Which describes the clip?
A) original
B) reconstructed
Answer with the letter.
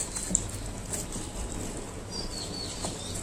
B